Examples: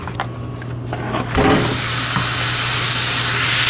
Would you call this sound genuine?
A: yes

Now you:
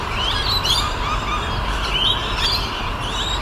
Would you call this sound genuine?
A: yes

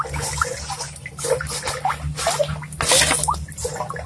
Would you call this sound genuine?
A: yes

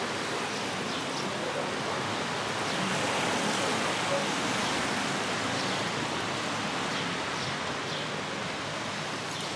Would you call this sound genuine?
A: yes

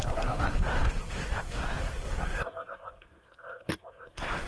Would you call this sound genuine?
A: no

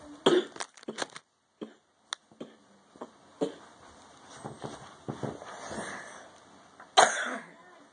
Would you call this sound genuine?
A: yes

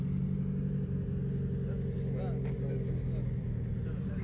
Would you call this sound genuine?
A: yes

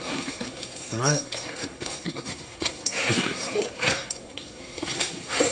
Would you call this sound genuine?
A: no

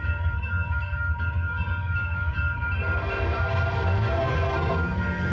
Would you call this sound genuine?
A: no